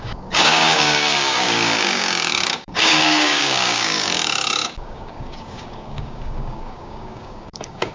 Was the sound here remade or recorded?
remade